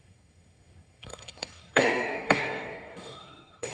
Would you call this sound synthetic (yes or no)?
yes